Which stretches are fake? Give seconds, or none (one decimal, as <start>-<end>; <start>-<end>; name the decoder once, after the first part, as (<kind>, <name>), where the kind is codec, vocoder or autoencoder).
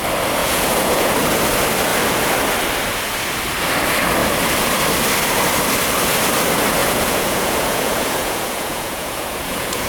0.4-1.1 (vocoder, Vocos); 6.8-9.9